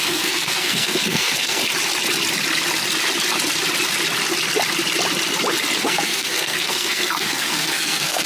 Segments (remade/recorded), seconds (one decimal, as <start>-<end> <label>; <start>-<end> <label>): 0.0-1.6 remade; 1.6-5.8 recorded; 5.8-8.3 remade